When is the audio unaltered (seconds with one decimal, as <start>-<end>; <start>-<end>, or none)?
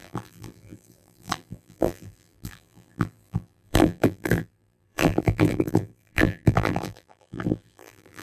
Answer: none